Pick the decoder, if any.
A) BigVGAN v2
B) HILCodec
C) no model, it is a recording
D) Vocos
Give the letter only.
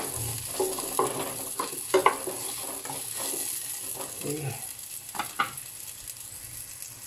C